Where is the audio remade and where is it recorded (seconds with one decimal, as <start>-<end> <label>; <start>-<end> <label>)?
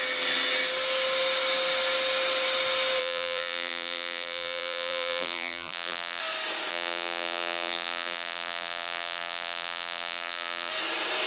0.0-3.0 recorded; 3.0-6.2 remade; 6.2-6.7 recorded; 6.7-10.7 remade; 10.7-11.3 recorded